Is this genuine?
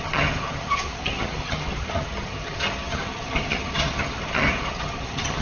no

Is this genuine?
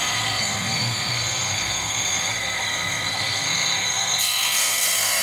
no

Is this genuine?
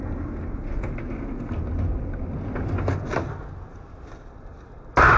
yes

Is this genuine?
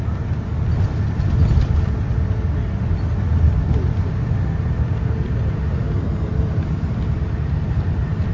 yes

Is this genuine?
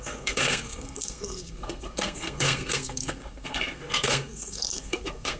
no